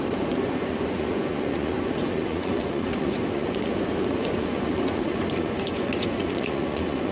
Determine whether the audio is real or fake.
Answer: fake